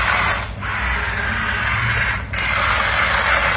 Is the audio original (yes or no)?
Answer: yes